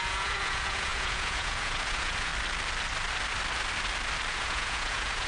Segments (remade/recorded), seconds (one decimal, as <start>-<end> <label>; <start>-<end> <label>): 0.0-2.3 remade; 2.3-4.3 recorded; 4.3-5.3 remade